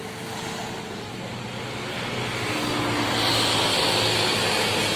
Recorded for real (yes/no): yes